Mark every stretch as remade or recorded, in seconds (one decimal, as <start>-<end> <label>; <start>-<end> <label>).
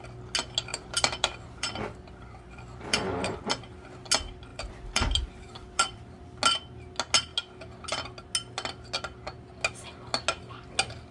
0.0-0.7 recorded; 0.7-3.5 remade; 3.5-4.5 recorded; 4.5-6.4 remade; 6.4-11.1 recorded